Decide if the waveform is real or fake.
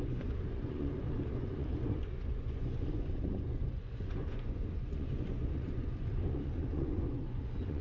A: fake